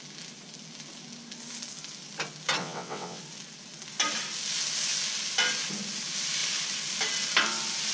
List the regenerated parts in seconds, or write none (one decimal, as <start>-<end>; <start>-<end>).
2.6-3.2